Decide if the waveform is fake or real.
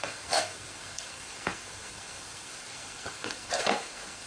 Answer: fake